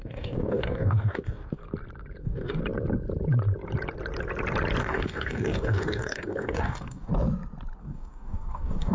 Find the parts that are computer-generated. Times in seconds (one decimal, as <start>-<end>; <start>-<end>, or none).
0.0-1.6; 2.2-2.6; 4.8-7.1; 7.8-8.9